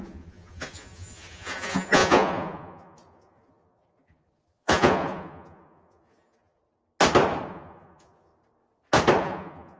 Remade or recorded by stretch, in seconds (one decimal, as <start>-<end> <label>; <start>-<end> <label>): 0.0-6.6 remade; 6.6-7.5 recorded; 7.5-8.3 remade; 8.3-9.2 recorded; 9.2-9.8 remade